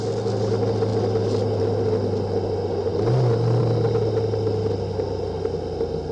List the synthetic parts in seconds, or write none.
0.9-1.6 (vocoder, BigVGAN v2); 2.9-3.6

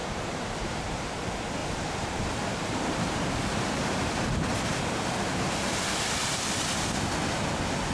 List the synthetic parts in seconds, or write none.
0.0-1.1 (vocoder, BigVGAN v2); 1.6-4.8